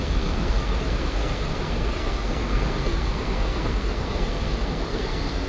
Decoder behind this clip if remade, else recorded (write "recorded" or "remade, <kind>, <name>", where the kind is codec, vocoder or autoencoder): remade, codec, SNAC